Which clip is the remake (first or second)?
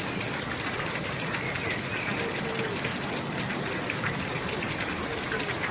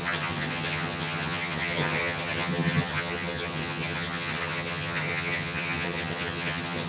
second